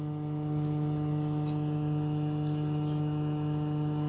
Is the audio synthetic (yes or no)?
no